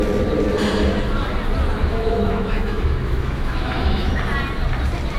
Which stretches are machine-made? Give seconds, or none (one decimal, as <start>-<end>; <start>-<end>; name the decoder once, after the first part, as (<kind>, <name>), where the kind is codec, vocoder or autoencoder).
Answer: 1.8-4.1 (autoencoder, DAC-VAE)